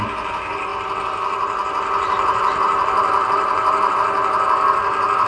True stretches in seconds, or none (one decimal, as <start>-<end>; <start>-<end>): 0.0-5.3